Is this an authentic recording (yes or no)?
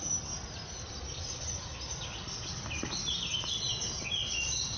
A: yes